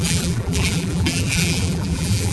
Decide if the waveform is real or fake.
fake